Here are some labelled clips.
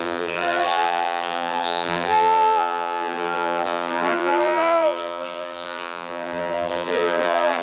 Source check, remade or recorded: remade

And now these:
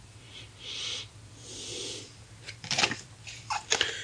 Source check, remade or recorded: recorded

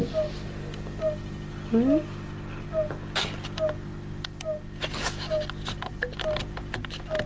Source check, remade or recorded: recorded